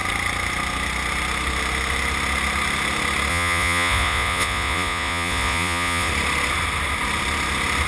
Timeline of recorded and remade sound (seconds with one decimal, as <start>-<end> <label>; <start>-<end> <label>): 0.0-3.3 recorded; 3.3-6.1 remade; 6.1-7.9 recorded